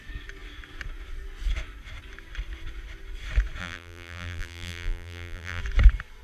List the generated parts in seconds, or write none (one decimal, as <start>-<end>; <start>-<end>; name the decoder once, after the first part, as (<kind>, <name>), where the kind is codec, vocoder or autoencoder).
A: 3.6-5.6 (vocoder, BigVGAN v2)